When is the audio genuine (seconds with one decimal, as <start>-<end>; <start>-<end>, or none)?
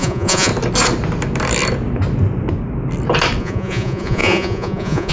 0.5-3.4